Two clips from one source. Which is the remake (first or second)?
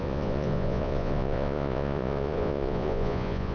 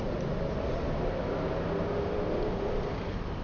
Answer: first